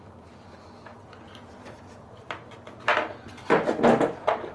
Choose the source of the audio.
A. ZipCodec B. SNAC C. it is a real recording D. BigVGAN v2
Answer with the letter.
C